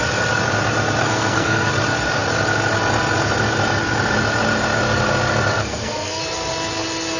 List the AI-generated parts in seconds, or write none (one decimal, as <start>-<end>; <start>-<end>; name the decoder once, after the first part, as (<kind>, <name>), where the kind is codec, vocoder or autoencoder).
1.0-1.7 (codec, SNAC); 5.6-6.2